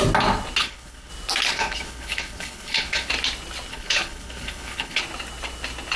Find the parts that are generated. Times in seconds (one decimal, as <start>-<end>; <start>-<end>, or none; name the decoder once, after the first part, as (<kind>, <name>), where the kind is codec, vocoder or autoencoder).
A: 0.6-1.1 (codec, HILCodec); 1.5-3.1; 3.7-5.0